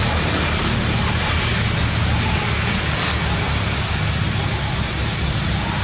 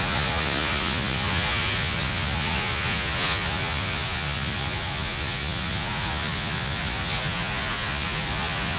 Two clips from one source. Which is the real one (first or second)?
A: first